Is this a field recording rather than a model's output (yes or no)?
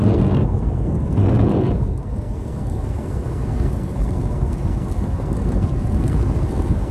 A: no